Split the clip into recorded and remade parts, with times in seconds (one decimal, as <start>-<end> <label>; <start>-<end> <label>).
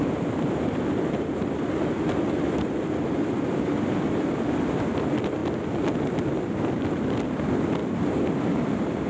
0.0-5.4 remade; 5.4-6.4 recorded; 6.4-7.8 remade; 7.8-8.5 recorded; 8.5-9.1 remade